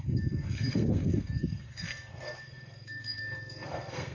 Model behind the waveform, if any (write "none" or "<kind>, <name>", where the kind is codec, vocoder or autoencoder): codec, SNAC